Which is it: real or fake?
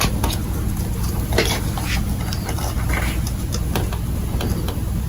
real